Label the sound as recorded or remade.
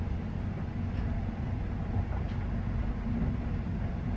recorded